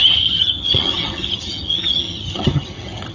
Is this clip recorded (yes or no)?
no